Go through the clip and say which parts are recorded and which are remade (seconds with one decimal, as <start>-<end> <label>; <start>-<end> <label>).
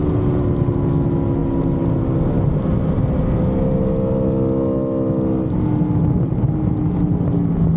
0.0-7.8 recorded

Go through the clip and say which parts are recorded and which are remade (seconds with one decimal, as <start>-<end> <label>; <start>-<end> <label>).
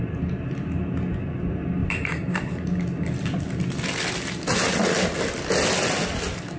0.0-6.6 recorded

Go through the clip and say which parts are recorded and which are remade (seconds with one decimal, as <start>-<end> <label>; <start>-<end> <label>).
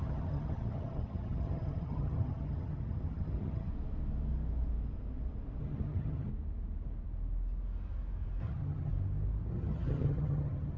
0.0-3.7 remade; 3.7-5.6 recorded; 5.6-6.3 remade; 6.3-8.4 recorded; 8.4-8.9 remade; 8.9-9.5 recorded; 9.5-10.8 remade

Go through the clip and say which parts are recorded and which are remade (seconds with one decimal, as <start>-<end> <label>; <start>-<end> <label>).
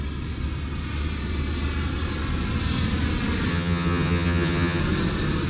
0.0-3.5 recorded; 3.5-4.8 remade; 4.8-5.5 recorded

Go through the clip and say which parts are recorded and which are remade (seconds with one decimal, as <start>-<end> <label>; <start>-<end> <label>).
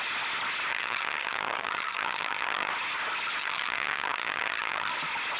0.0-0.7 recorded; 0.7-2.7 remade; 2.7-3.4 recorded; 3.4-4.9 remade; 4.9-5.4 recorded